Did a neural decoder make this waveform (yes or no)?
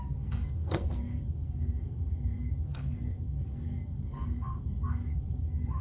yes